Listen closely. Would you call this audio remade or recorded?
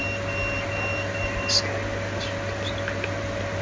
recorded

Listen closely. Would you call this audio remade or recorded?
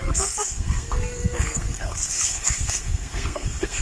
remade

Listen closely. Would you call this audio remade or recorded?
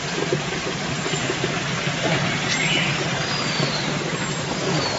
recorded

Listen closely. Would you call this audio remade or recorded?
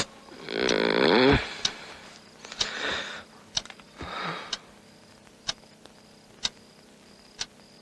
recorded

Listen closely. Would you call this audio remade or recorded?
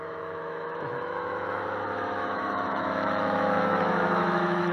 remade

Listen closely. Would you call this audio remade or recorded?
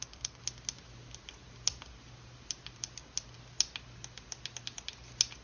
recorded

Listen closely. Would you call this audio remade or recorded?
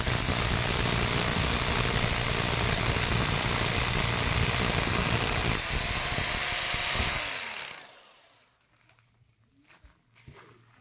recorded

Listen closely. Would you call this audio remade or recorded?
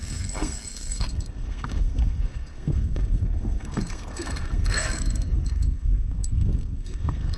remade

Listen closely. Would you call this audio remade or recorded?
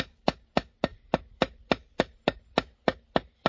recorded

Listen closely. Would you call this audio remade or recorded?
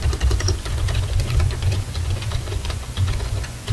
remade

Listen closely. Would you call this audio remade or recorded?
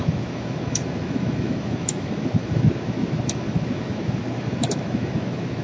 remade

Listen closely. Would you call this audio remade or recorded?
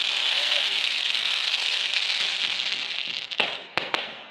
remade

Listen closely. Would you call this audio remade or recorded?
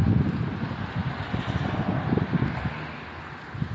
recorded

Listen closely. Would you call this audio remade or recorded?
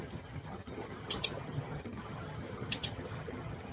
remade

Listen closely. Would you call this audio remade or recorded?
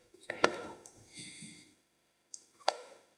remade